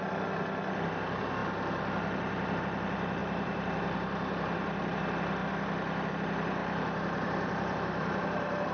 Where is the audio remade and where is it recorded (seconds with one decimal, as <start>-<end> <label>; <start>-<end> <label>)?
0.0-3.2 recorded; 3.2-5.0 remade; 5.0-6.6 recorded; 6.6-8.7 remade